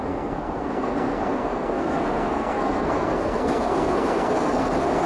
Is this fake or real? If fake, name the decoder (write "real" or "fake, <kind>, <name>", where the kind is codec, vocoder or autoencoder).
fake, codec, SNAC